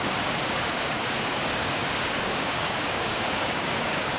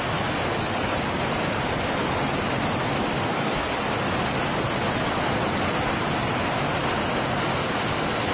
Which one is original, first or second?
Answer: second